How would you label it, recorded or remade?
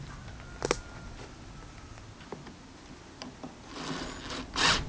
recorded